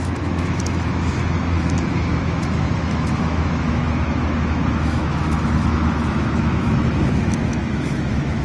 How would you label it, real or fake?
fake